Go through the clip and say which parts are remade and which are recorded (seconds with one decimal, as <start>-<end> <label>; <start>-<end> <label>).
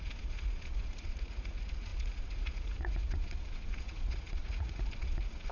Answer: 0.0-5.5 remade